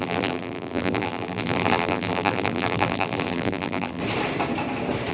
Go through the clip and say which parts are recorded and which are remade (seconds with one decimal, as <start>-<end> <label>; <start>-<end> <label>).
0.0-4.0 remade; 4.0-5.1 recorded